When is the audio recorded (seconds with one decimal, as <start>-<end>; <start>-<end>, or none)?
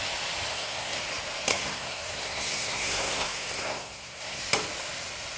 0.0-0.5; 1.0-1.5; 4.4-5.4